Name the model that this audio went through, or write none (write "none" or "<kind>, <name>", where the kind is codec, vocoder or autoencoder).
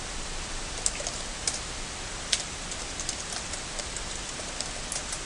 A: none